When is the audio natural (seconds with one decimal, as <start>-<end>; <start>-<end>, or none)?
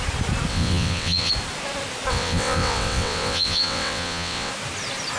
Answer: 0.0-0.5; 1.3-2.1; 4.5-5.2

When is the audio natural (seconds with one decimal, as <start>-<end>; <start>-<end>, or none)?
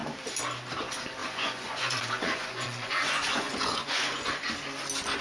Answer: 0.0-1.2; 4.3-5.2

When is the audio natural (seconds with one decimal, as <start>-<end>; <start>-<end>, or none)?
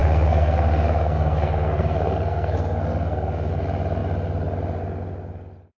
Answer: 3.5-5.8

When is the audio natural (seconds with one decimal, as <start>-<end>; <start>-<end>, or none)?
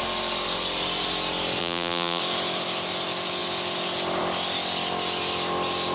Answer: 0.0-1.6; 2.2-5.9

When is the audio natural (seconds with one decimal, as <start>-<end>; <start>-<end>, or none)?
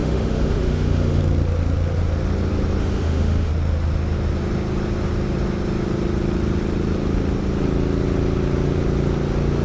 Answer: 1.2-2.8; 3.5-9.6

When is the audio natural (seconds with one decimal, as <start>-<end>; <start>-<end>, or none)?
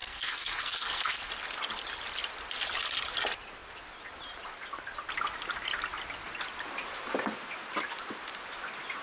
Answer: 1.3-9.0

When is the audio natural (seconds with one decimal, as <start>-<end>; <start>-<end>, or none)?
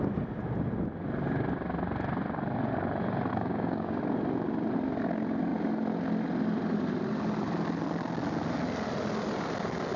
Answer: 0.0-3.3; 4.0-10.0